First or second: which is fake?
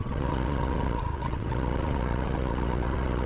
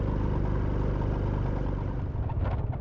first